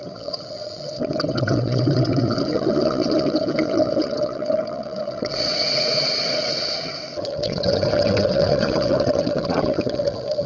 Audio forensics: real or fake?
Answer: fake